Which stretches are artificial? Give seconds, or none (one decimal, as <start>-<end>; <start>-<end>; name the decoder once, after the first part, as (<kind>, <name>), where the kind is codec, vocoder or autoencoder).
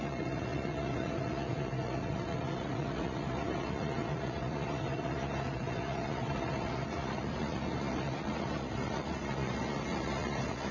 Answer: 0.0-10.7 (vocoder, Vocos)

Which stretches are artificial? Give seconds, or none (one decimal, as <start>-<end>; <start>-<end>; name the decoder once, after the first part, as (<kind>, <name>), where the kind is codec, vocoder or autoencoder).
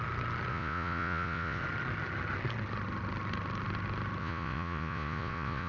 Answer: 0.5-1.6 (vocoder, Vocos); 4.2-5.7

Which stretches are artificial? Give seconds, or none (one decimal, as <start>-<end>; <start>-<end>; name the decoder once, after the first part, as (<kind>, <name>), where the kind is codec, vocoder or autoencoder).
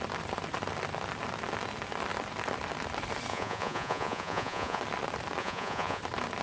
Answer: 3.3-4.8 (vocoder, Vocos); 5.4-6.0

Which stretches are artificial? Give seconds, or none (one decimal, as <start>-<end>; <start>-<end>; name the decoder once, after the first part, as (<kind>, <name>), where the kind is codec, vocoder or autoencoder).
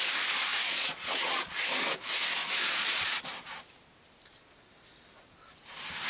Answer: 0.5-1.7 (vocoder, Vocos); 2.4-3.2